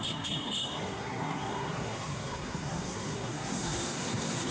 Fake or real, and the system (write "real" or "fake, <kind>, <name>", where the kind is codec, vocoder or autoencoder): fake, codec, SNAC